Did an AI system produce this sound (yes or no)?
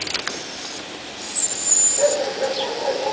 no